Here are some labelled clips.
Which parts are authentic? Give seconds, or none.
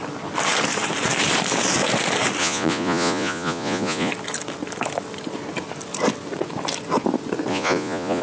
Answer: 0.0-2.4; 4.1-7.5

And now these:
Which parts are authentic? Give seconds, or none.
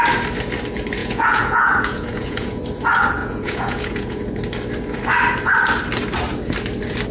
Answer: 0.0-1.0; 2.6-3.2; 4.2-7.1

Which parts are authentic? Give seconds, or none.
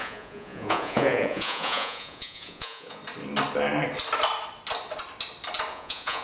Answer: 3.0-5.7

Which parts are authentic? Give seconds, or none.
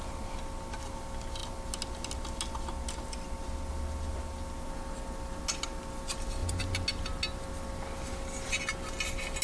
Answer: 0.0-9.4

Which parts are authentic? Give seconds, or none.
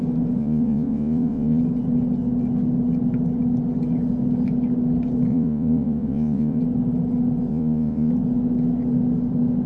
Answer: 0.0-0.4; 1.6-5.3; 6.6-7.5; 8.1-9.7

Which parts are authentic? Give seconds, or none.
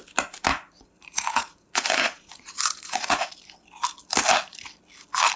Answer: 0.0-0.5; 3.3-5.4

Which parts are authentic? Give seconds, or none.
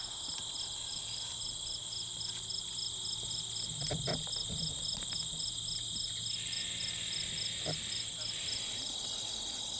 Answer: 0.0-9.8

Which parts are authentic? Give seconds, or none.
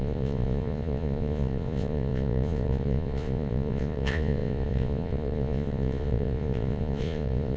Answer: none